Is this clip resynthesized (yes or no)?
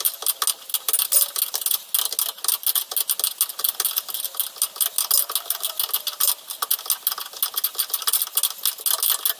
no